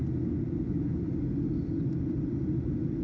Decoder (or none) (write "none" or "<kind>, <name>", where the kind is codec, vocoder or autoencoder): none